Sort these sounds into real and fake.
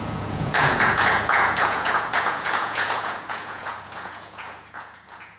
fake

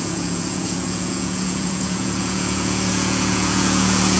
fake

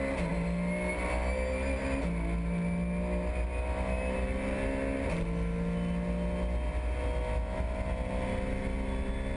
real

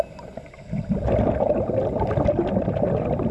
real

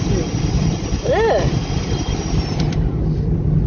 real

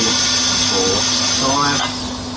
real